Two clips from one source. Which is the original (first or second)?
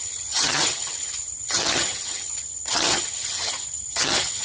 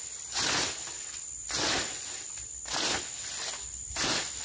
second